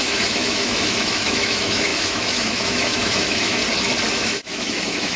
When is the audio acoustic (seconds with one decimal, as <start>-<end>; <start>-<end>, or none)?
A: 3.6-4.1